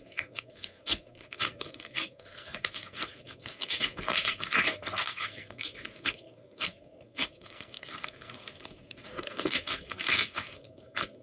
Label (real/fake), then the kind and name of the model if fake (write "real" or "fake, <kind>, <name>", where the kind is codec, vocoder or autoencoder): fake, codec, SNAC